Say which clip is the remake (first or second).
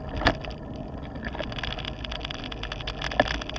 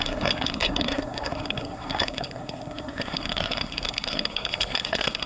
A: second